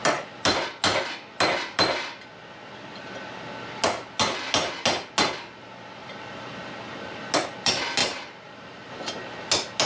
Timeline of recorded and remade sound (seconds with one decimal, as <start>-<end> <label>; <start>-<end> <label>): 0.0-6.0 recorded; 6.0-6.6 remade; 6.6-8.0 recorded; 8.0-8.9 remade; 8.9-9.9 recorded